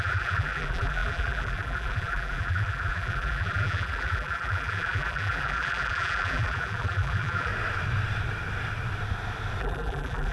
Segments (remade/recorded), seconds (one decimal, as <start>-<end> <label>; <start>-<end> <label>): 0.0-7.5 remade; 7.5-9.6 recorded; 9.6-10.3 remade